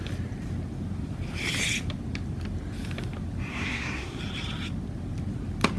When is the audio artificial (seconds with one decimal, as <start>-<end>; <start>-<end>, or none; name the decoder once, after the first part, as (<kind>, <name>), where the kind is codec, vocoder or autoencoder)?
3.5-4.2 (codec, SNAC)